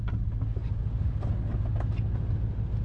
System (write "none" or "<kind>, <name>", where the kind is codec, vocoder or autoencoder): none